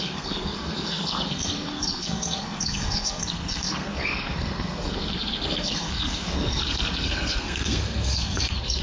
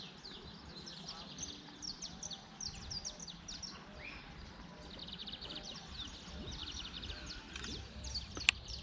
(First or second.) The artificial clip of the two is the first